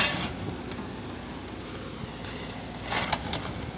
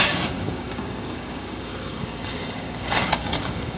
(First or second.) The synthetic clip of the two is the second